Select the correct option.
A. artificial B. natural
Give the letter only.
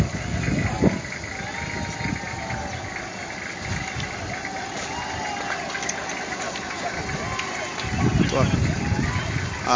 B